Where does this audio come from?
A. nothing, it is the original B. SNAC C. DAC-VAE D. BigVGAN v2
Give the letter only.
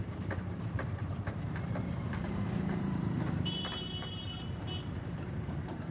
D